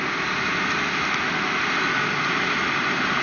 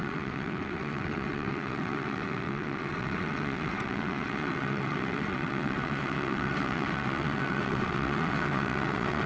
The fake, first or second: second